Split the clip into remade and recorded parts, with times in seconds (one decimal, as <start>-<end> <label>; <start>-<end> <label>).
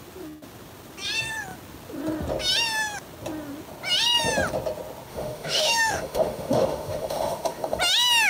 0.0-5.1 recorded; 5.1-7.8 remade; 7.8-8.3 recorded